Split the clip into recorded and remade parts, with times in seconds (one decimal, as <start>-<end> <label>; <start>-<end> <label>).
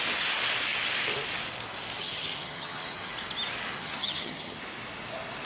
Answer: 0.0-2.0 recorded; 2.0-3.1 remade; 3.1-3.8 recorded; 3.8-4.6 remade; 4.6-5.5 recorded